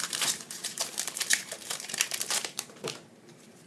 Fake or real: fake